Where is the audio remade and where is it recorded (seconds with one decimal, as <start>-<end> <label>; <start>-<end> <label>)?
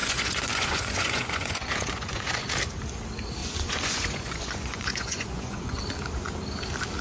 0.0-2.5 remade; 2.5-3.4 recorded; 3.4-5.8 remade; 5.8-7.0 recorded